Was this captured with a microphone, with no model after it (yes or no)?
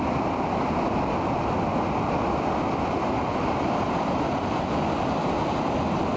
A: yes